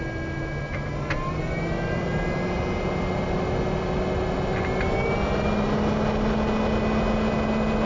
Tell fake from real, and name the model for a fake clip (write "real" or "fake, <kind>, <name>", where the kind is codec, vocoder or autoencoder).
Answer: real